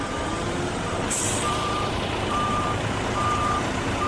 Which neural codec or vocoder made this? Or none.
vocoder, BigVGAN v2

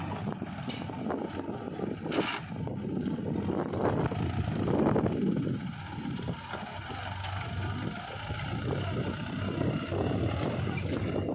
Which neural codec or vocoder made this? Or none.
none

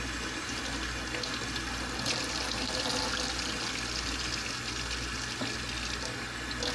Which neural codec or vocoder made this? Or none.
none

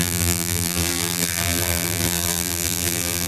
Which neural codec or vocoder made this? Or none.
vocoder, BigVGAN v2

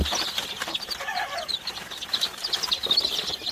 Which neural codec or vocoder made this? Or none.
vocoder, BigVGAN v2